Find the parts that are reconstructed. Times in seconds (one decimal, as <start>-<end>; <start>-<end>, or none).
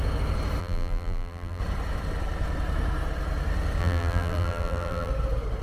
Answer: 0.6-1.6; 3.8-5.1